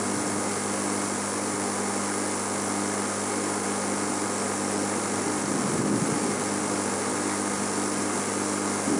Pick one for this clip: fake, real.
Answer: real